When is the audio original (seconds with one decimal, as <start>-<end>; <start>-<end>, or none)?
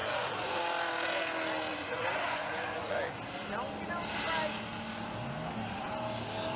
0.6-1.7; 3.0-6.6